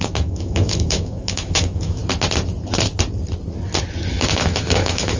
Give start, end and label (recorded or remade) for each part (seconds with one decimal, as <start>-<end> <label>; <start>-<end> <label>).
0.0-2.0 remade; 2.0-4.1 recorded; 4.1-5.2 remade